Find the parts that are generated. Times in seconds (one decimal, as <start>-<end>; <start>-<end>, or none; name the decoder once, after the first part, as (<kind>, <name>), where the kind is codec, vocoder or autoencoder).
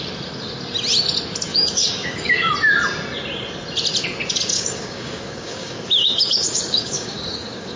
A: 1.5-2.5 (codec, DAC); 4.5-7.8